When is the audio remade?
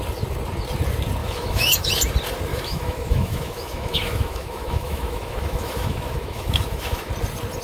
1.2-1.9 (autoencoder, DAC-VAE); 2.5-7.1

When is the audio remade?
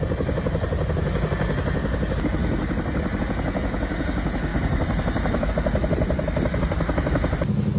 4.5-5.5 (vocoder, BigVGAN v2)